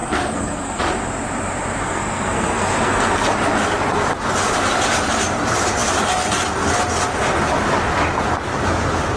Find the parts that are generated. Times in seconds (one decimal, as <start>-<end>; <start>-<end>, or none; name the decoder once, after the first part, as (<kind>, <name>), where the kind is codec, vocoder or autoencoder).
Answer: 0.0-0.8 (codec, SNAC); 1.8-3.3